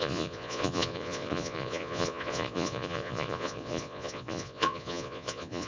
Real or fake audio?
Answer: fake